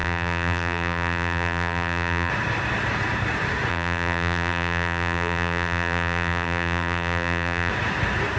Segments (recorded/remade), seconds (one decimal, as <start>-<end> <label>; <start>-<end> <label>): 0.0-2.3 remade; 2.3-3.7 recorded; 3.7-7.7 remade; 7.7-8.4 recorded